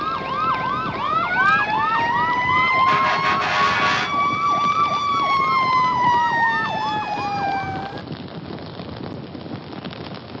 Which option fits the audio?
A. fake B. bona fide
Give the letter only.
B